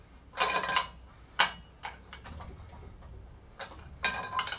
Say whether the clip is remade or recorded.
recorded